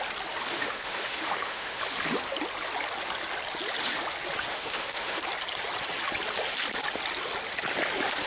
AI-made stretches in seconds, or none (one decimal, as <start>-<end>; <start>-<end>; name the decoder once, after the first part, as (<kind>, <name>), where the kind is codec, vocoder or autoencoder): 0.5-1.8 (autoencoder, DAC-VAE); 4.5-5.2